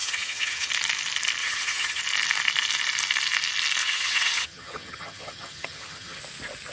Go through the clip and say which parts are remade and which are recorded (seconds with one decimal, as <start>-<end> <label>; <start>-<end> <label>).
0.0-0.7 remade; 0.7-1.4 recorded; 1.4-2.0 remade; 2.0-3.8 recorded; 3.8-6.2 remade; 6.2-6.7 recorded